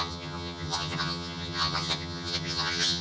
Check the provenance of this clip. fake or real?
fake